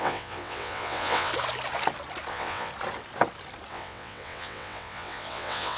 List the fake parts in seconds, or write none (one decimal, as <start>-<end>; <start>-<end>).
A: 0.0-1.3; 2.3-2.7; 3.7-5.8